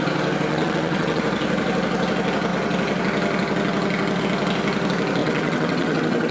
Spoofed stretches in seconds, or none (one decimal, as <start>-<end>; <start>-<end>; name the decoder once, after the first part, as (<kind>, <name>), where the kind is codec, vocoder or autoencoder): 0.5-1.2 (vocoder, WaveNeXt); 5.2-6.3